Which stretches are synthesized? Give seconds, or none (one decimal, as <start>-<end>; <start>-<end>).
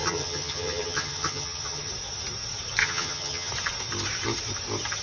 0.0-1.9; 2.8-3.5